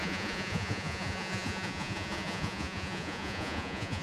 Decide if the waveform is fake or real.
fake